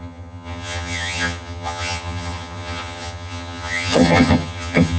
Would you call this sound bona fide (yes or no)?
no